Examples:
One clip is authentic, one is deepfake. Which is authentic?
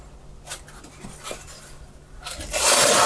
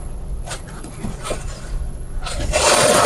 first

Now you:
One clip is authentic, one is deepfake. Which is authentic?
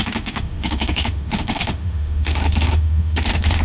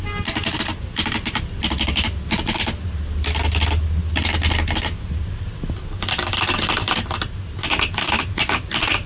second